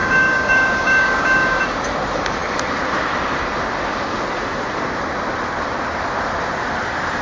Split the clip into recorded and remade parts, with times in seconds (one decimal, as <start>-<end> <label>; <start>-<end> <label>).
0.0-1.6 remade; 1.6-7.2 recorded